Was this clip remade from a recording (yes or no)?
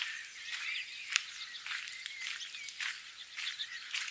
no